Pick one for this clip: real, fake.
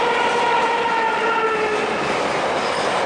real